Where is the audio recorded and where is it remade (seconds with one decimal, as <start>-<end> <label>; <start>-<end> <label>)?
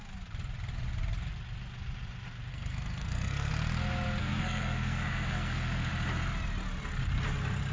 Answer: 0.0-2.5 recorded; 2.5-3.5 remade; 3.5-4.2 recorded; 4.2-5.9 remade; 5.9-7.7 recorded